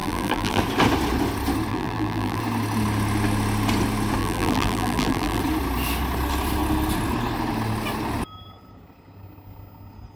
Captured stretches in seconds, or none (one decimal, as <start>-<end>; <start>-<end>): 0.6-1.7; 2.4-4.2; 5.4-10.2